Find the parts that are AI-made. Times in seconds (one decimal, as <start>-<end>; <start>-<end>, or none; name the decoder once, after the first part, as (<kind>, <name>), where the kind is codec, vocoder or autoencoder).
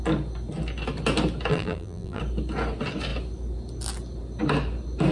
1.5-2.2 (vocoder, BigVGAN v2)